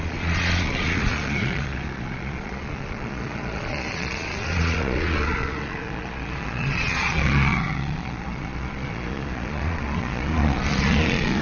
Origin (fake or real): fake